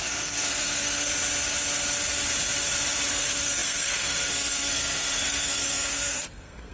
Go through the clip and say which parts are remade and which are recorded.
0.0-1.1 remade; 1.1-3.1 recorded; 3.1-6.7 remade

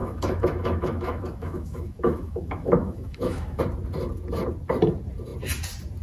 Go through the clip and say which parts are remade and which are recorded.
0.0-3.6 remade; 3.6-6.0 recorded

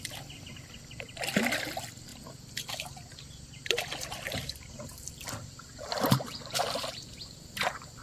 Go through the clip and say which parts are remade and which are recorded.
0.0-2.1 recorded; 2.1-6.9 remade; 6.9-8.0 recorded

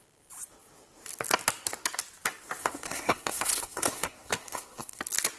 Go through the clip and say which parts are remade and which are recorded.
0.0-2.6 recorded; 2.6-5.0 remade; 5.0-5.4 recorded

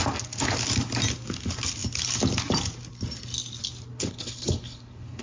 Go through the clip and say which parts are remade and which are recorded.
0.0-3.9 recorded; 3.9-5.2 remade

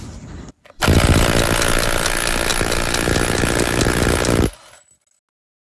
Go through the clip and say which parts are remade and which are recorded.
0.0-5.6 recorded

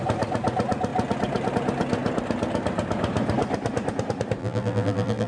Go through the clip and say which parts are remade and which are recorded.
0.0-4.4 recorded; 4.4-5.3 remade